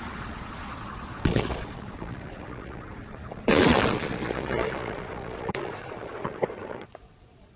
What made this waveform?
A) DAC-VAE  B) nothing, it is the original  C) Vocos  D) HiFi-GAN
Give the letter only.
C